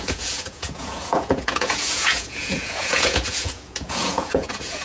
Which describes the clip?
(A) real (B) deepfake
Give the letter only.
B